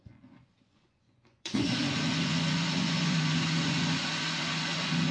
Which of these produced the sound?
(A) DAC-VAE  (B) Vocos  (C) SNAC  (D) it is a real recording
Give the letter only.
B